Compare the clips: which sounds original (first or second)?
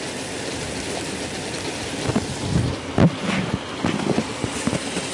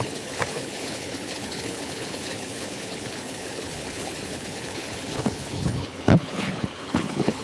first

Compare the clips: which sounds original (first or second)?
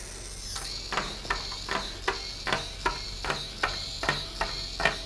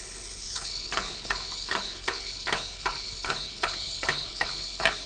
first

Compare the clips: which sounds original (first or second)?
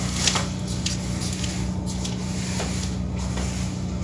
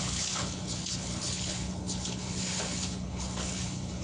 first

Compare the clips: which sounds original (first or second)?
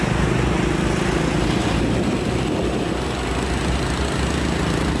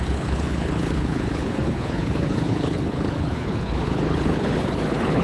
first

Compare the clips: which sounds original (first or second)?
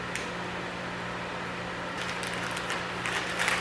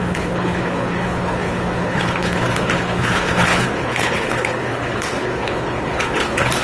first